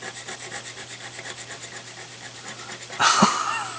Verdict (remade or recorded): recorded